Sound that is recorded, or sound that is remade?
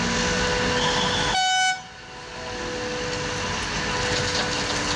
recorded